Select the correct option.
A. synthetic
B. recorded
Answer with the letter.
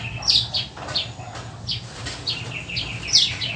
B